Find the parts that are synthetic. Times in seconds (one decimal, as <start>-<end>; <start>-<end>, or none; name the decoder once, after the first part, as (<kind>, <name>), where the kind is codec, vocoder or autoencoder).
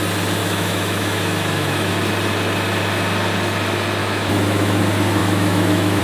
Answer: 0.4-1.9 (autoencoder, DAC-VAE); 4.0-4.8; 5.2-6.0